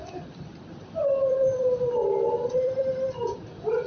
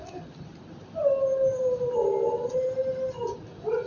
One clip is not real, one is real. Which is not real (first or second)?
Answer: first